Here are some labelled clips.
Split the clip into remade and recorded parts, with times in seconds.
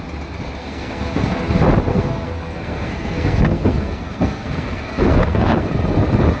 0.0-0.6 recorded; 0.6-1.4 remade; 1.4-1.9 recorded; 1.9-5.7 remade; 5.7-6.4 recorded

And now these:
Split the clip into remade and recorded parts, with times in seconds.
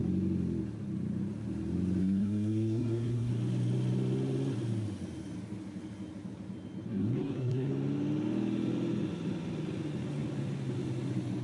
0.0-2.0 recorded; 2.0-3.3 remade; 3.3-6.9 recorded; 6.9-7.7 remade; 7.7-11.4 recorded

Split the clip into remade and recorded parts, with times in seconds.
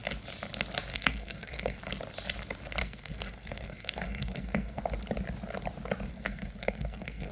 0.0-0.9 recorded; 0.9-1.8 remade; 1.8-2.8 recorded; 2.8-4.8 remade; 4.8-6.1 recorded; 6.1-7.3 remade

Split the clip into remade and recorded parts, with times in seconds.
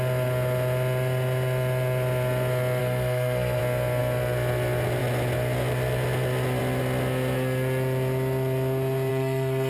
0.0-2.8 recorded; 2.8-3.6 remade; 3.6-9.1 recorded; 9.1-9.7 remade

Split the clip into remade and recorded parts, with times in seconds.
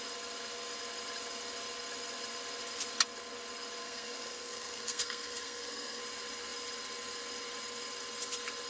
0.0-3.8 recorded; 3.8-6.0 remade; 6.0-8.7 recorded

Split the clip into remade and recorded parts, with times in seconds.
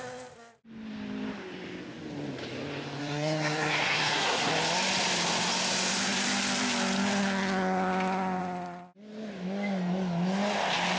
0.0-3.0 recorded; 3.0-4.5 remade; 4.5-11.0 recorded